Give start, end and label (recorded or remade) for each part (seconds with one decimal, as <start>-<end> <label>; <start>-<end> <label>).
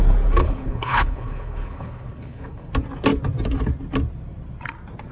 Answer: 0.0-0.4 recorded; 0.4-2.7 remade; 2.7-5.1 recorded